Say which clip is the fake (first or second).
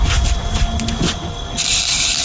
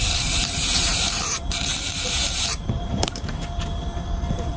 second